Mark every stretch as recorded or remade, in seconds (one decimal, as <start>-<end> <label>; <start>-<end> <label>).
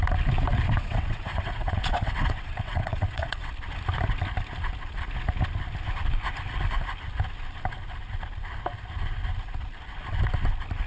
0.0-0.8 recorded; 0.8-3.5 remade; 3.5-10.9 recorded